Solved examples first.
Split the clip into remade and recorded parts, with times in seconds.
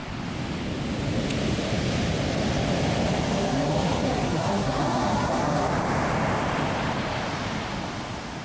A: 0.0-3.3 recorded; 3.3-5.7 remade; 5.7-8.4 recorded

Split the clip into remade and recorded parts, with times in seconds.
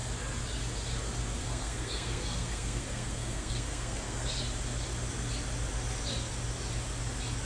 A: 0.0-1.4 recorded; 1.4-4.4 remade; 4.4-7.4 recorded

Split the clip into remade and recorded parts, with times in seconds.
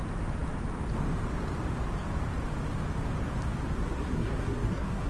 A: 0.0-3.8 recorded; 3.8-5.1 remade